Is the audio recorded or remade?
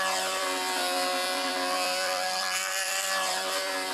remade